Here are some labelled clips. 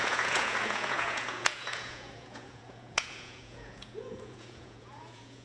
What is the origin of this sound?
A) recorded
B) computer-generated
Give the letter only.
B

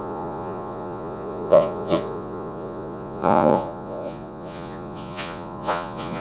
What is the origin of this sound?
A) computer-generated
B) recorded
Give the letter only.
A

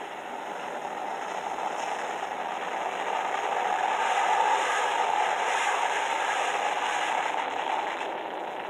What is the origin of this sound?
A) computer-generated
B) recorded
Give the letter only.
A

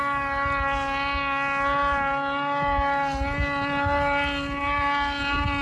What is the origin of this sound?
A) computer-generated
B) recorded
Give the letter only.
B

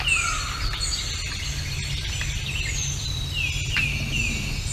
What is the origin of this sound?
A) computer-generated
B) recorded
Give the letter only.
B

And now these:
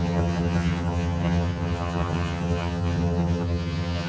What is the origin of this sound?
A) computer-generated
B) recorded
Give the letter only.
A